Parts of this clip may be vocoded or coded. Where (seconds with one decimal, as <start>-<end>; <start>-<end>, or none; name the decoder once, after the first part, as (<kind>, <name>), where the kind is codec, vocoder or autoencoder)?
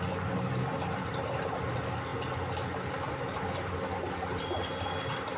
none